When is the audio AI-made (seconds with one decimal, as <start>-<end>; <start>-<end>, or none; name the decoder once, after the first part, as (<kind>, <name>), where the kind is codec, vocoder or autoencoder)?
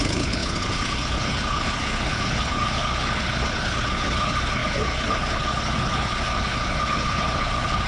0.0-7.9 (codec, HILCodec)